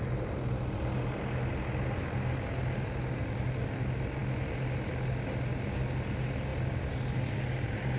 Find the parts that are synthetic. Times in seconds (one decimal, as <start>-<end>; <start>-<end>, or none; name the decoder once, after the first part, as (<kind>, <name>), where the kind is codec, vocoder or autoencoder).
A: none